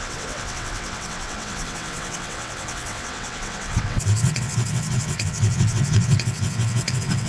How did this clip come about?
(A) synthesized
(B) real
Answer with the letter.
A